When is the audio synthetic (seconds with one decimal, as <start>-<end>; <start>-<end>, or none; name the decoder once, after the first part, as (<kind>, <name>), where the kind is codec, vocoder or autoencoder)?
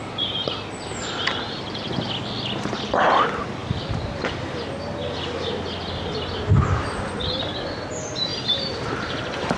3.6-4.5 (vocoder, BigVGAN v2); 8.3-9.6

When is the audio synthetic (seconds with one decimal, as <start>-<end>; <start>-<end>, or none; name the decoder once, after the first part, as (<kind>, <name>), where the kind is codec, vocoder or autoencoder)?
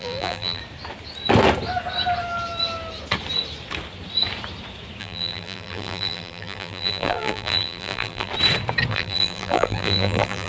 0.0-0.6 (vocoder, BigVGAN v2); 5.0-8.3; 8.9-10.5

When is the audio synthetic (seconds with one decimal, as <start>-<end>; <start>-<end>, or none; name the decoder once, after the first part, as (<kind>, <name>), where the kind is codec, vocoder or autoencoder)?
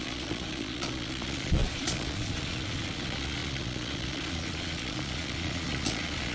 0.0-6.3 (vocoder, Vocos)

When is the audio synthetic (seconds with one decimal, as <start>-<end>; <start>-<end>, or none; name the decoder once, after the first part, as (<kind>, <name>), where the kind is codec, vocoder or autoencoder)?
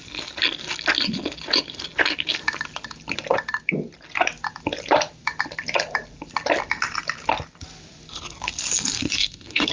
8.9-9.7 (codec, SNAC)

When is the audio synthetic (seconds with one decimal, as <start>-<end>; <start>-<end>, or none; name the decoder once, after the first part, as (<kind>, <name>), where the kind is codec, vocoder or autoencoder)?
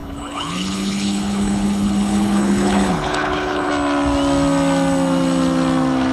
0.0-3.7 (codec, HILCodec)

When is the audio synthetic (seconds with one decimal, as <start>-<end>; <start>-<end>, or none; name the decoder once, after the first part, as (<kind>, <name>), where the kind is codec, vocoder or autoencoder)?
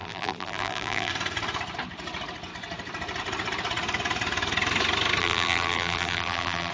0.0-1.1 (vocoder, BigVGAN v2); 5.2-6.7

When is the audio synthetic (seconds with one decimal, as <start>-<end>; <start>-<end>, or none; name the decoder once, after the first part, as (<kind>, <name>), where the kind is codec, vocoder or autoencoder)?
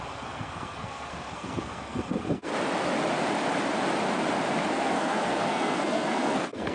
0.0-2.5 (codec, SNAC); 4.7-6.7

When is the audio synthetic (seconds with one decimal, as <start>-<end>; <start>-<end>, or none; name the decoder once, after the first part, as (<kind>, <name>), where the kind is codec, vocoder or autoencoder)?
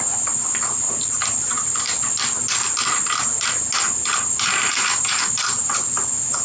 none